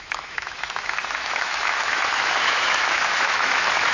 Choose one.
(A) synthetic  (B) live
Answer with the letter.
A